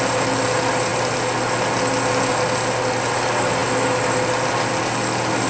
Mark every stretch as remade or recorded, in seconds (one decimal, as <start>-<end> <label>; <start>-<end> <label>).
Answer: 0.0-5.5 recorded